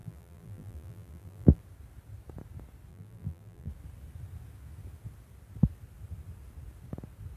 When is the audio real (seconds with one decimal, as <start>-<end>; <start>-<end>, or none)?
1.6-2.9; 3.7-7.4